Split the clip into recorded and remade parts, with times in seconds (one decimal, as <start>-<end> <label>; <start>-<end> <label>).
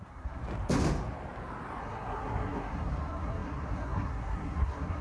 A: 0.0-0.4 remade; 0.4-1.8 recorded; 1.8-5.0 remade